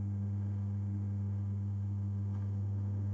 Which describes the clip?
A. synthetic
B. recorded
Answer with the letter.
A